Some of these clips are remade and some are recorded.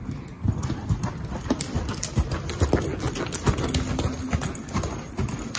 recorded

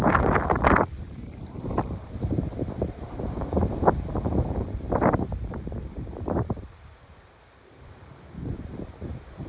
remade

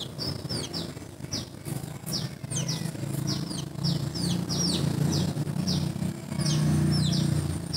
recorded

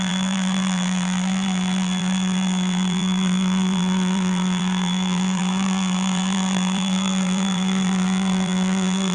remade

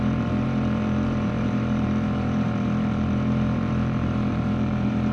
remade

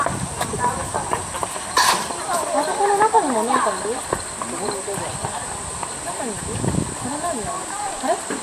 remade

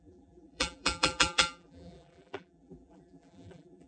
remade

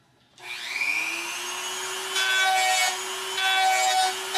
recorded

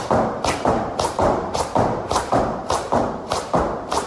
remade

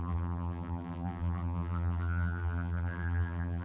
remade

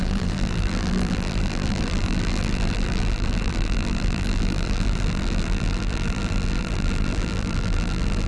remade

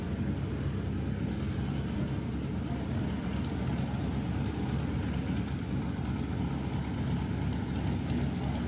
recorded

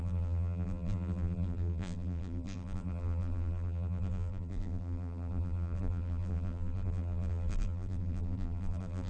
remade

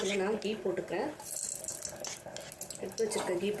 recorded